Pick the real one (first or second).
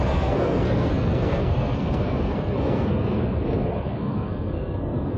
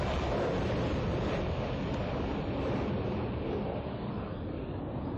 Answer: second